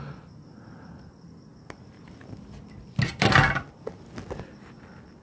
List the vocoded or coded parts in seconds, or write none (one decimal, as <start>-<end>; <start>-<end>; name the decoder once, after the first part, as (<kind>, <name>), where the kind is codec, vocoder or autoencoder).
none